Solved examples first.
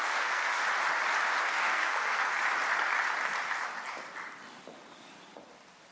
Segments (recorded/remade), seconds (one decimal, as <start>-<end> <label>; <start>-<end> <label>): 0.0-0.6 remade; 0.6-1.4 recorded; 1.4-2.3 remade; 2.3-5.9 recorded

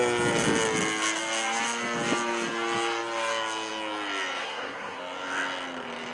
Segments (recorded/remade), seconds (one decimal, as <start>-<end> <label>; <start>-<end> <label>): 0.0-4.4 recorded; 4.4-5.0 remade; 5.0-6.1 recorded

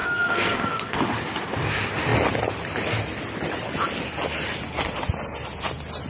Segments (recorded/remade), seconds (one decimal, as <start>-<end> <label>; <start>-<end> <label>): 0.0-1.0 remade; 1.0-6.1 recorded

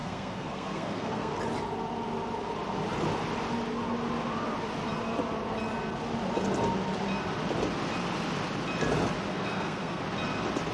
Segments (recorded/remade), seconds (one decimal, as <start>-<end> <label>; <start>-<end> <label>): 0.0-1.3 remade; 1.3-9.3 recorded; 9.3-10.0 remade; 10.0-10.7 recorded

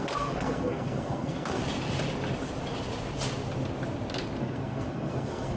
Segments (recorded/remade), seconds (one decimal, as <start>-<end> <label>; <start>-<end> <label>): 0.0-1.6 remade; 1.6-4.4 recorded; 4.4-5.6 remade

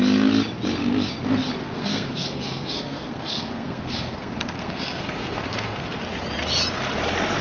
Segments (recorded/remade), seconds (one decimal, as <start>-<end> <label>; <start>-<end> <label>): 0.0-1.6 recorded; 1.6-6.0 remade; 6.0-7.4 recorded